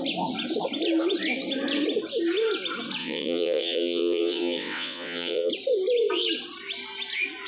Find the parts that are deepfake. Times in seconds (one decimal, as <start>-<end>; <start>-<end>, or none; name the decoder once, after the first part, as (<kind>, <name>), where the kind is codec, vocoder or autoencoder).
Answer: 3.0-5.5 (vocoder, WaveNeXt)